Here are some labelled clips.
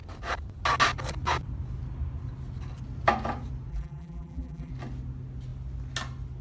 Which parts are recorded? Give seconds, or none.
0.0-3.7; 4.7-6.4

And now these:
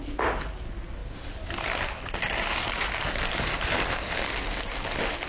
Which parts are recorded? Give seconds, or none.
0.0-1.0; 4.2-5.3